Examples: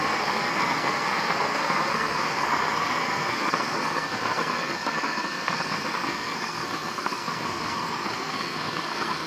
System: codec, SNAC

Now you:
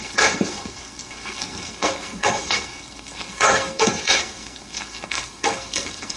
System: codec, SNAC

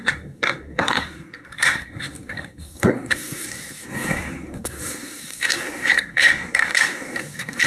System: codec, SNAC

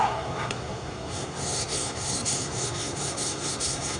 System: codec, SNAC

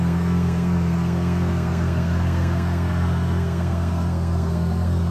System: codec, SNAC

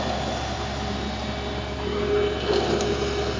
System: none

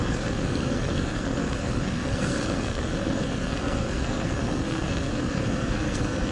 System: codec, SNAC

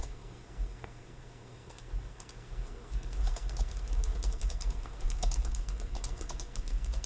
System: codec, SNAC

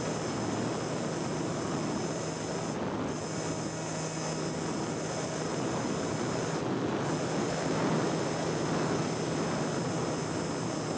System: none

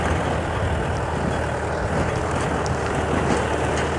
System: none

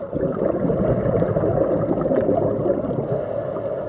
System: none